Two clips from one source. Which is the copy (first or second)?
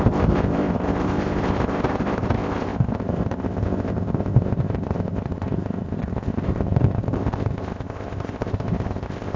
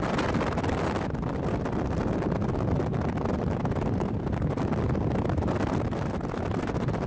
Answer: first